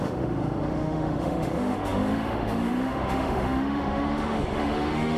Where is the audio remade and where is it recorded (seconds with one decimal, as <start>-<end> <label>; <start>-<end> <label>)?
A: 0.0-5.2 remade